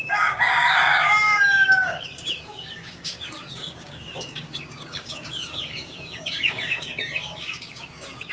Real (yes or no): no